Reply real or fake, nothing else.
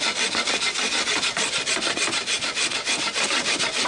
real